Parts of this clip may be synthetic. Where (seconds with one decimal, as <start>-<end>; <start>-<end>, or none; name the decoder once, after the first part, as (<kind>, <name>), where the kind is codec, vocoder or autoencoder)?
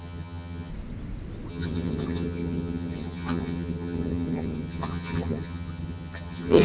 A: 0.0-0.7 (vocoder, HiFi-GAN); 1.5-6.6